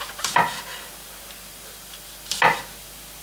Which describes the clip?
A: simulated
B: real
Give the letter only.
B